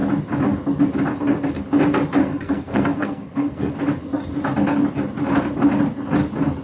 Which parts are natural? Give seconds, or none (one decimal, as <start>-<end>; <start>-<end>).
0.0-2.2; 3.7-6.6